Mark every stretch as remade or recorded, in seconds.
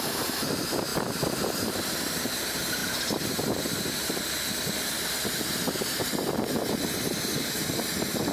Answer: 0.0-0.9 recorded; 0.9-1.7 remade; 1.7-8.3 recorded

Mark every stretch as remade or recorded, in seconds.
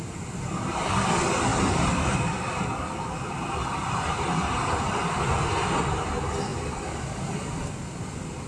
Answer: 0.0-1.5 recorded; 1.5-5.3 remade; 5.3-6.5 recorded; 6.5-7.7 remade; 7.7-8.5 recorded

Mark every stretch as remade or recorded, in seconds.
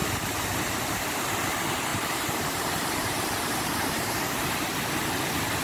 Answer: 0.0-1.9 recorded; 1.9-4.2 remade; 4.2-5.6 recorded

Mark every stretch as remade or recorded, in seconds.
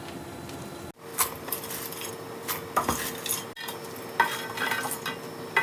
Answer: 0.0-1.1 recorded; 1.1-2.1 remade; 2.1-5.6 recorded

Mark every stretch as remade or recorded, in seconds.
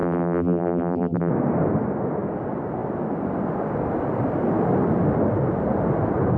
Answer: 0.0-1.3 remade; 1.3-6.4 recorded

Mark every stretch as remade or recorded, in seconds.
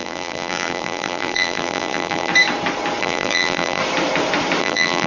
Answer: 0.0-2.3 remade; 2.3-3.0 recorded; 3.0-3.8 remade; 3.8-4.6 recorded; 4.6-5.1 remade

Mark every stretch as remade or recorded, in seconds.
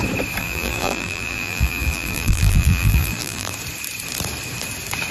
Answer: 0.0-0.4 recorded; 0.4-3.5 remade; 3.5-5.1 recorded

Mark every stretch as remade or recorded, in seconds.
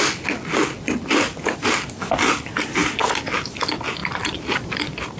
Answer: 0.0-2.8 recorded; 2.8-3.6 remade; 3.6-4.0 recorded; 4.0-4.8 remade; 4.8-5.2 recorded